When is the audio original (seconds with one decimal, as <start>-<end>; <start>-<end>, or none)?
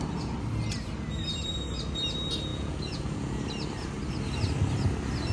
0.0-2.5; 3.4-5.3